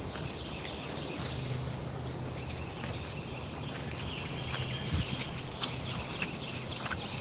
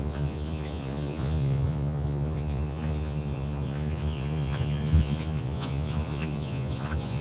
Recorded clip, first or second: first